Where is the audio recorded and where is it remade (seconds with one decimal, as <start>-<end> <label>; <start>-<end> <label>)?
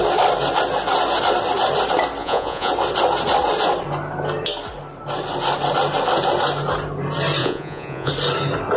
0.0-2.2 recorded; 2.2-2.7 remade; 2.7-7.4 recorded; 7.4-8.1 remade; 8.1-8.8 recorded